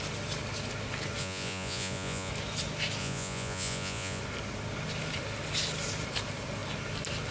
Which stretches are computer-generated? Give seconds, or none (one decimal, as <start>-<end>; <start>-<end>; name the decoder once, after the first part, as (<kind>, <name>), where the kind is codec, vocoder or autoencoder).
1.2-2.3 (vocoder, Vocos); 3.0-4.2